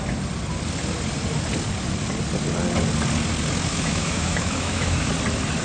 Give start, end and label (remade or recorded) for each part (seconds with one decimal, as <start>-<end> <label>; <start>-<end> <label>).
0.0-3.7 recorded; 3.7-5.1 remade; 5.1-5.6 recorded